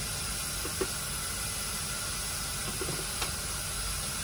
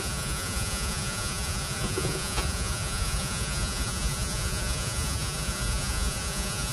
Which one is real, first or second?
first